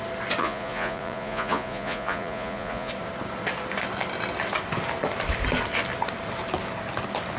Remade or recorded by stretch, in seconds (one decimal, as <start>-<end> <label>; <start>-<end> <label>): 0.0-0.4 recorded; 0.4-2.9 remade; 2.9-7.4 recorded